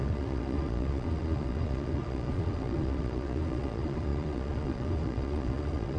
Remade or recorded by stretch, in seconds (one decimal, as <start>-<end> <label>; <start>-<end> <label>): 0.0-6.0 remade